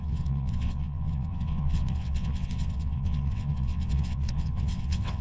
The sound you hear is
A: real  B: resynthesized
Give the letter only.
B